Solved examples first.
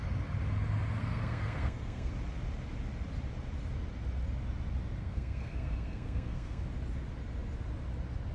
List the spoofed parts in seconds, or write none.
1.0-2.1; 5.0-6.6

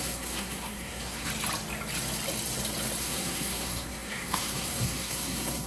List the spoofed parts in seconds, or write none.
0.0-1.3; 3.0-5.7

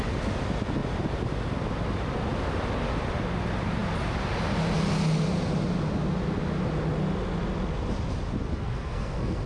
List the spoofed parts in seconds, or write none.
8.4-9.5